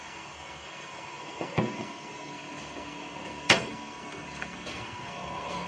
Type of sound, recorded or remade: remade